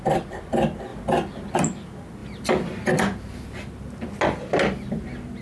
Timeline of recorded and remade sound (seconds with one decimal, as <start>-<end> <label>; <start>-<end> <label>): 0.0-5.4 recorded